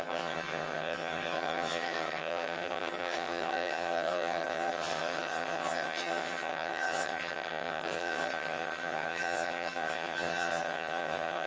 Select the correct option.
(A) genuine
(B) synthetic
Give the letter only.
B